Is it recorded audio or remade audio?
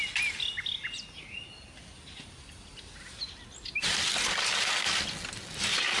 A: recorded